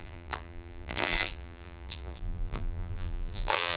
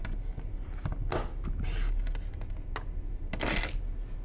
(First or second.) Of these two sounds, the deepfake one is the first